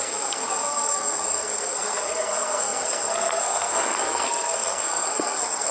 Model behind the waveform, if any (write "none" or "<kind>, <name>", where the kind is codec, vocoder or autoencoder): codec, SNAC